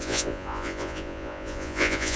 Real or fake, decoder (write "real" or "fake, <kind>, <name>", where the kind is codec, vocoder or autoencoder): fake, vocoder, Vocos